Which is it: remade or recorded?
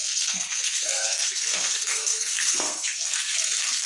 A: remade